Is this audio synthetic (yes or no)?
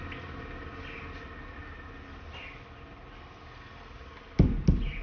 no